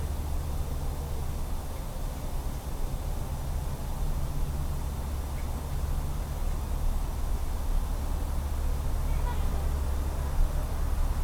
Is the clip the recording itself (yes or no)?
yes